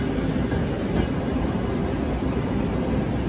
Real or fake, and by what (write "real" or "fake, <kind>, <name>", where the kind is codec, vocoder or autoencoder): real